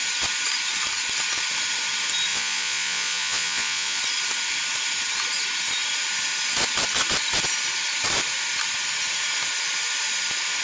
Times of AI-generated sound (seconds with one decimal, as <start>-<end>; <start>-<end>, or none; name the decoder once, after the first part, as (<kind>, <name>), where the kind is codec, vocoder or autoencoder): 2.3-4.0 (vocoder, Vocos)